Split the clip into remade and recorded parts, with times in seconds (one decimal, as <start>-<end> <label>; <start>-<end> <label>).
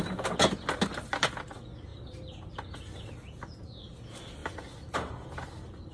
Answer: 0.0-5.9 recorded